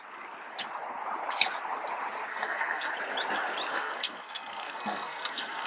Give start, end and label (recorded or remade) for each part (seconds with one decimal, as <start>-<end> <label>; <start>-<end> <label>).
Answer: 0.0-2.3 recorded; 2.3-2.9 remade; 2.9-3.7 recorded; 3.7-5.7 remade